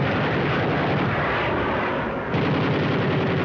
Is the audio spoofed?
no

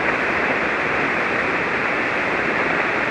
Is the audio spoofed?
no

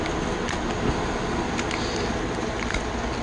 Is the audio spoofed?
no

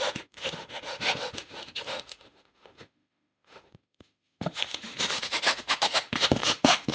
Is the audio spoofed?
yes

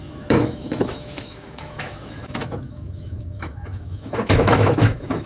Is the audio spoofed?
yes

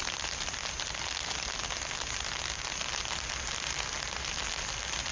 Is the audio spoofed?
no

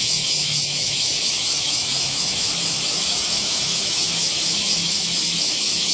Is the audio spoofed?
yes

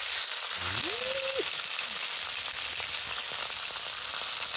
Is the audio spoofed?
no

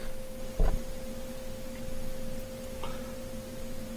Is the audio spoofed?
no